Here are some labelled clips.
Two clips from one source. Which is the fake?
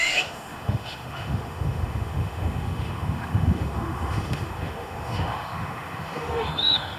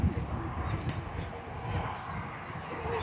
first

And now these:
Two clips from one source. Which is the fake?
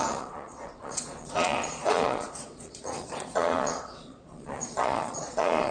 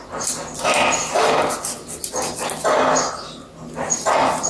first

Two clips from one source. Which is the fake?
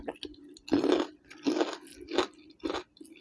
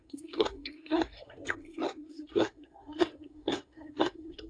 second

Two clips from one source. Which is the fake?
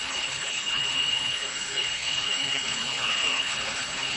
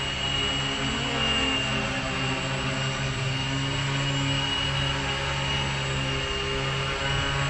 first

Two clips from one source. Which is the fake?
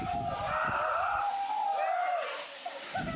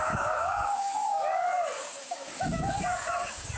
second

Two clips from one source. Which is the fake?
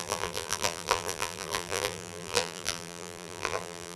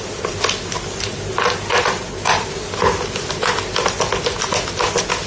first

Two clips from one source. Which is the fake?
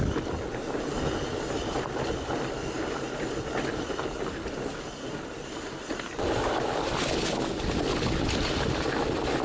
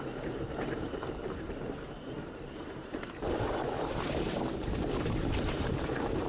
second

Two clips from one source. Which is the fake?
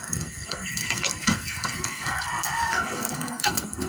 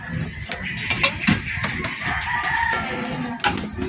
first